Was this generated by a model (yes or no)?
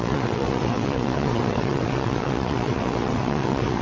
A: yes